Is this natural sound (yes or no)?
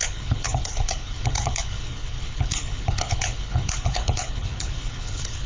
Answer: no